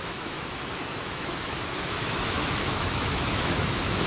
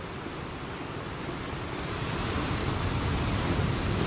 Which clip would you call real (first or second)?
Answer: second